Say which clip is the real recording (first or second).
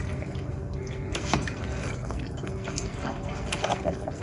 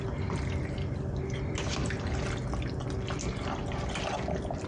second